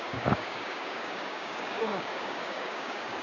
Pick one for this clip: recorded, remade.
remade